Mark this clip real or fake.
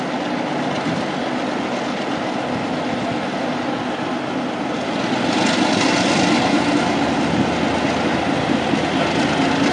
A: real